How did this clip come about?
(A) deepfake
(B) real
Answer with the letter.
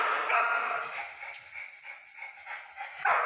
B